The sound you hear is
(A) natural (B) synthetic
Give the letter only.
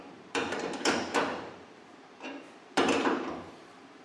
B